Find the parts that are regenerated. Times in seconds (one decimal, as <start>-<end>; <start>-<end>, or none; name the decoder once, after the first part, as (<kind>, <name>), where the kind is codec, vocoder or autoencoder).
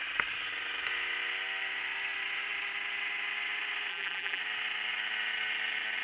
3.9-4.4 (vocoder, BigVGAN v2)